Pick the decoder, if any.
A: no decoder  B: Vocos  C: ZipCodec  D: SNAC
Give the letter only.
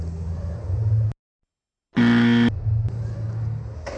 A